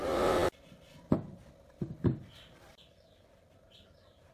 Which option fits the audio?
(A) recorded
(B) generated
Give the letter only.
A